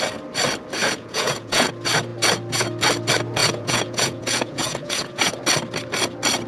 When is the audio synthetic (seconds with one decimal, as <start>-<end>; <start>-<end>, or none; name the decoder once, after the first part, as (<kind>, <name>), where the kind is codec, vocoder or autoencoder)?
0.8-1.7 (vocoder, Vocos); 3.4-5.3